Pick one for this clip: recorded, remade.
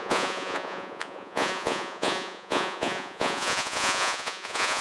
remade